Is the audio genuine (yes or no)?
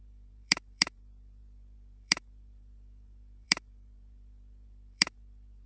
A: no